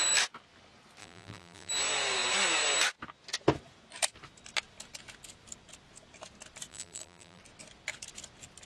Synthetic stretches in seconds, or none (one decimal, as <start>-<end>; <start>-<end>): 1.0-1.7; 6.7-7.4